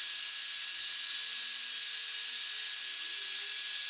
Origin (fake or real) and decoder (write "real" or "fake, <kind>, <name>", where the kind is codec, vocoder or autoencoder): real